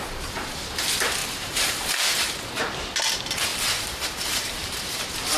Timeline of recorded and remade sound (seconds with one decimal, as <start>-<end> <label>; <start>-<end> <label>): 0.0-1.2 recorded; 1.2-2.5 remade; 2.5-3.5 recorded; 3.5-5.0 remade; 5.0-5.4 recorded